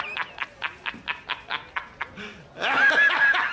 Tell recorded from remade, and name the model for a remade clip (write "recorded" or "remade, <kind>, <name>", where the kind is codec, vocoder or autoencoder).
recorded